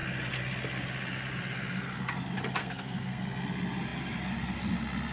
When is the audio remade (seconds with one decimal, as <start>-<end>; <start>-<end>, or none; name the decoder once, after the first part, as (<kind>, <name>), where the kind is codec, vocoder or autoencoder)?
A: 2.6-3.2 (codec, SNAC)